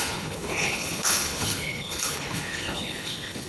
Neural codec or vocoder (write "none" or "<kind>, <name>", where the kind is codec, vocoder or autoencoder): codec, HILCodec